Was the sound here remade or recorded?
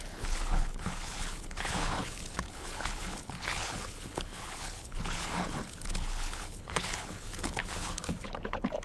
remade